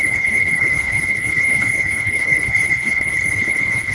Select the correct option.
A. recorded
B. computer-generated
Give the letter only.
B